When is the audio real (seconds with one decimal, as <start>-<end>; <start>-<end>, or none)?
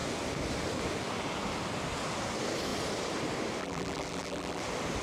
0.0-3.6; 4.6-5.0